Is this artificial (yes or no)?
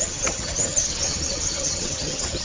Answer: yes